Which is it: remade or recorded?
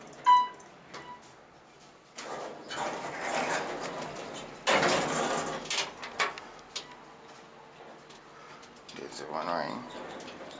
recorded